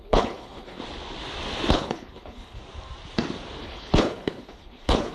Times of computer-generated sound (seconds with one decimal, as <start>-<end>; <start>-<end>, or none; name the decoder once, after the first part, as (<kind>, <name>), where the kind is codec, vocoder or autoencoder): 0.0-0.8 (codec, HILCodec); 1.7-2.6; 3.6-5.1